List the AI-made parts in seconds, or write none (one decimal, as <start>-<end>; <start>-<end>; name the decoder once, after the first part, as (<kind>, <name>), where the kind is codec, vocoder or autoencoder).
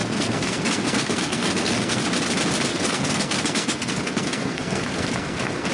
0.0-2.0 (codec, SNAC); 2.7-5.7